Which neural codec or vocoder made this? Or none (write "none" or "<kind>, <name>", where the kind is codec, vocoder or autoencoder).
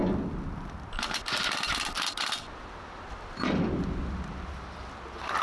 none